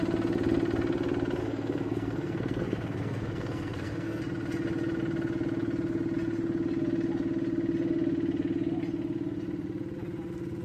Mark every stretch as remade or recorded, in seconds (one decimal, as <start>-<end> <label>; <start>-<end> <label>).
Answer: 0.0-1.4 recorded; 1.4-4.2 remade; 4.2-10.6 recorded